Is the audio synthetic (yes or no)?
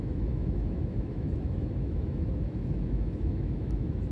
yes